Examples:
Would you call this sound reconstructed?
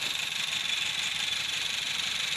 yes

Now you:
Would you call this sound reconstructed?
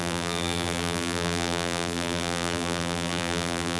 yes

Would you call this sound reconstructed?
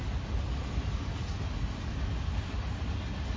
no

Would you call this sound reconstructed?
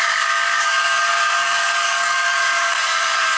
yes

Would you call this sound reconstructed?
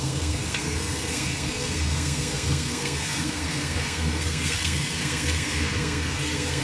yes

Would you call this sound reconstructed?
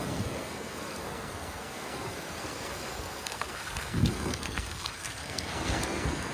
yes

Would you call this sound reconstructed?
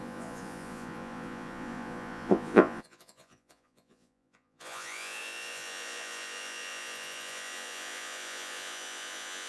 yes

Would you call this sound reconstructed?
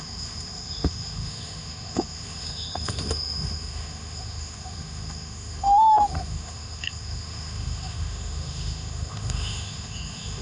yes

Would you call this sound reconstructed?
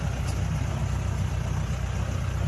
no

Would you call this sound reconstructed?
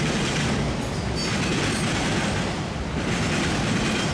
no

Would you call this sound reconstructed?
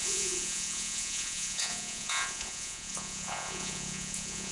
yes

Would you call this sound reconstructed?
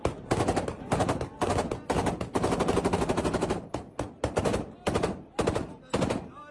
no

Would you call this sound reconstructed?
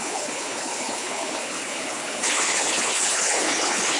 yes